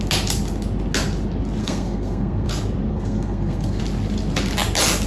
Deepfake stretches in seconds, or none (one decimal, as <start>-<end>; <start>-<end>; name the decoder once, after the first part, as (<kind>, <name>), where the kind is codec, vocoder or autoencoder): 1.6-2.5 (codec, SNAC); 2.9-3.8